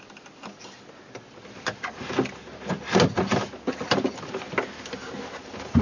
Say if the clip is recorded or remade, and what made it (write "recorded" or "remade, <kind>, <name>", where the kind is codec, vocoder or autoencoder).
recorded